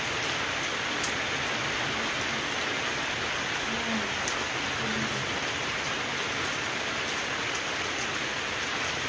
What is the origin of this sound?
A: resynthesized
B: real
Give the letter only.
B